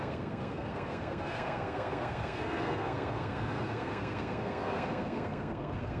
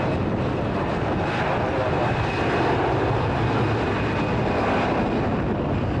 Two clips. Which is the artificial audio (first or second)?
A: first